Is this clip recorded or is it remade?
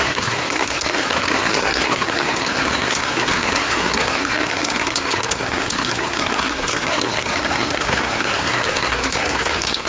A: remade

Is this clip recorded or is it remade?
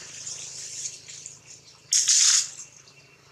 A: recorded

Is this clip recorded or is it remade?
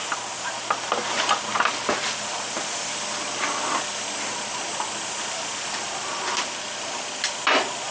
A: recorded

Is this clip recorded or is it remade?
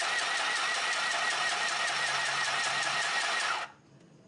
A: recorded